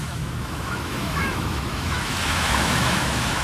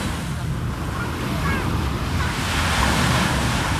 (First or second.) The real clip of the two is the second